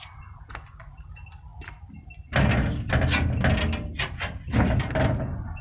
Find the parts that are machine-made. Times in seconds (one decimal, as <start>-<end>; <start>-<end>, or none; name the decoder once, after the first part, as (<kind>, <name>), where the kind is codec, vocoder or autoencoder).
none

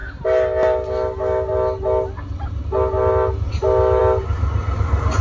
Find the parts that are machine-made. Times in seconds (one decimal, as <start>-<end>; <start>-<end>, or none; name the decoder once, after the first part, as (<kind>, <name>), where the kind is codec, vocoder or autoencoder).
none

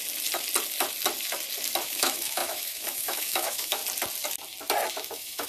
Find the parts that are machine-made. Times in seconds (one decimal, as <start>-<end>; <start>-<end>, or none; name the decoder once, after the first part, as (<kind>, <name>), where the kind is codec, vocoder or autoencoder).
1.8-3.8 (autoencoder, DAC-VAE); 4.9-5.5